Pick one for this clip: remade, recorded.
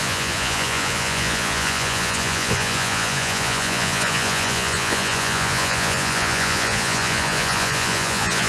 remade